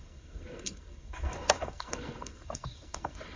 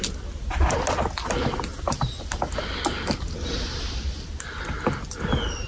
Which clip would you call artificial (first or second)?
first